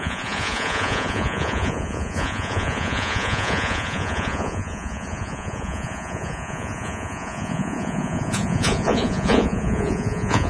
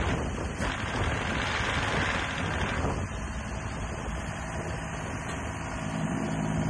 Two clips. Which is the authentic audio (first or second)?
second